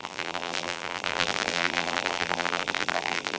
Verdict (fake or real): fake